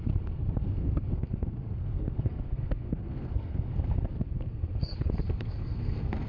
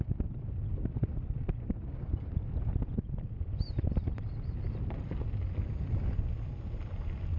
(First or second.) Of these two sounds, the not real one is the first